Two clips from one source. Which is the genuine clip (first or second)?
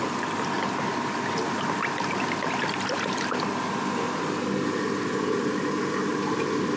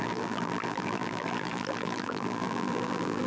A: first